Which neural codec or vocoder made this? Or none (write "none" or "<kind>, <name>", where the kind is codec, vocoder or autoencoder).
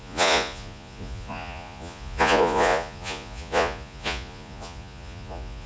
vocoder, Vocos